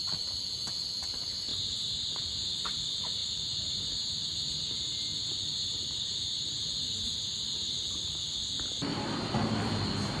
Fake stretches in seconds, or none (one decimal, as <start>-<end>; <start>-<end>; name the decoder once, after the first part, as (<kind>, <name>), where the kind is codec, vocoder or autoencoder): none